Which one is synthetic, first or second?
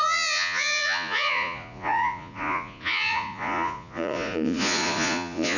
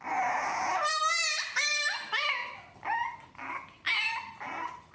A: first